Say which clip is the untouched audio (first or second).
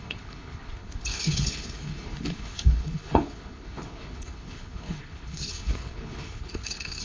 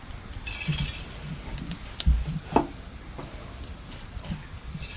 second